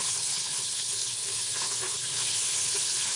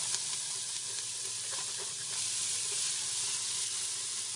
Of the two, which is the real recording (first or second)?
second